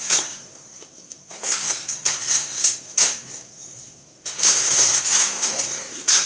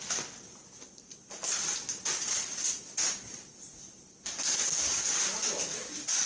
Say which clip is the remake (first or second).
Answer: first